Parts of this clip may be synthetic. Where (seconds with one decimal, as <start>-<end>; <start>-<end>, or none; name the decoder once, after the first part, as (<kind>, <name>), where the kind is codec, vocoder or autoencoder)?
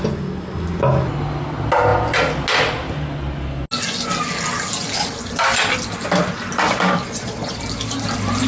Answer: 7.0-7.6 (vocoder, Vocos)